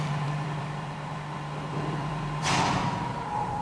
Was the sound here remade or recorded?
remade